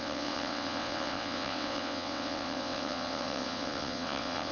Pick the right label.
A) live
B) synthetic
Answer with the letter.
B